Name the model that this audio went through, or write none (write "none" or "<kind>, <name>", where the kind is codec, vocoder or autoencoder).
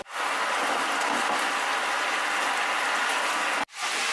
none